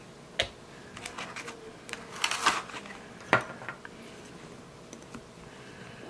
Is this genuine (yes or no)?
yes